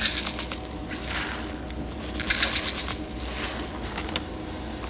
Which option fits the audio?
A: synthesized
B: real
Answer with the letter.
B